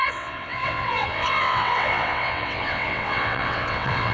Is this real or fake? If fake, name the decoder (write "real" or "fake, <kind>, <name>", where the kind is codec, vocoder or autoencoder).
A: fake, vocoder, WaveNeXt